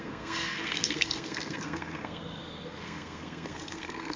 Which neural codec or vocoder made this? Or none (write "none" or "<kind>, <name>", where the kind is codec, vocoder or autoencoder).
codec, SNAC